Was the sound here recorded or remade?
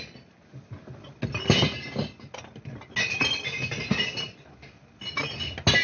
recorded